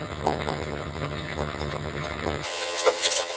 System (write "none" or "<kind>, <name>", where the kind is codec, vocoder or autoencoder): vocoder, HiFi-GAN